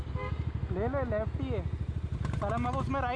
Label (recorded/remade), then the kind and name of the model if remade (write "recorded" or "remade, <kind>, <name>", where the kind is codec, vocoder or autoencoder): recorded